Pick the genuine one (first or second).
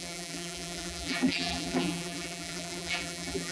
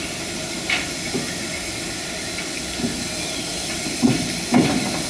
second